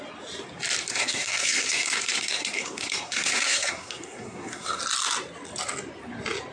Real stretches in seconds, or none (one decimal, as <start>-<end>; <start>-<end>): 0.0-0.9; 4.8-6.5